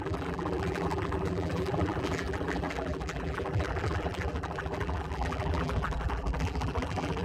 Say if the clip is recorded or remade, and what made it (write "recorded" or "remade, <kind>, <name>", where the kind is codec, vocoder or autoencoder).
remade, vocoder, BigVGAN v2